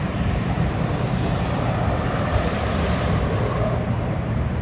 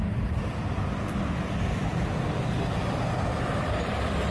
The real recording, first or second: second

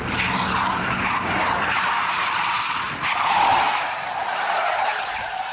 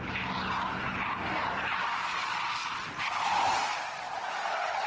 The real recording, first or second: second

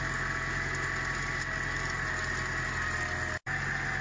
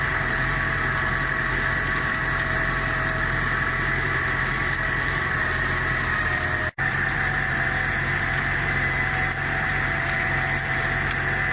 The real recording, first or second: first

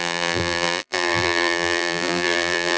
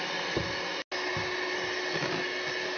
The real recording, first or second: second